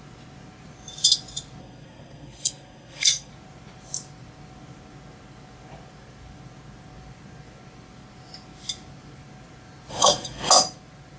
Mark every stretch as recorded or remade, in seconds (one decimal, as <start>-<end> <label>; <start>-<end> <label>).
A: 0.0-1.6 recorded; 1.6-3.3 remade; 3.3-9.9 recorded; 9.9-10.5 remade; 10.5-11.2 recorded